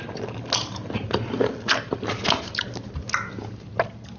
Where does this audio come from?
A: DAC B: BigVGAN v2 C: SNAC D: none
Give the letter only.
D